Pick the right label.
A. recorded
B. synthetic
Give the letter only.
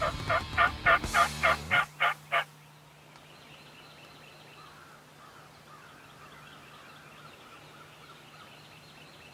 A